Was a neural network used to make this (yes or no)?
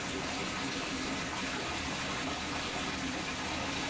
no